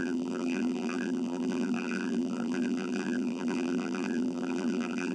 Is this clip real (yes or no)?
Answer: no